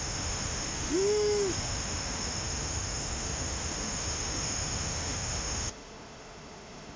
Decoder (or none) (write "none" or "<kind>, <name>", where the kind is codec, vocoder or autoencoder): autoencoder, DAC-VAE